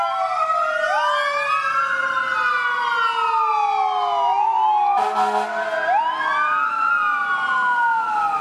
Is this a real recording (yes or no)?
yes